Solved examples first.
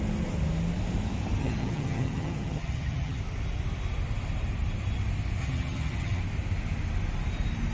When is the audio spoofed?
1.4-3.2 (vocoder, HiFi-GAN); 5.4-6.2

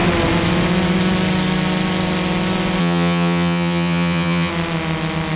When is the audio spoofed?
2.8-4.5 (vocoder, HiFi-GAN)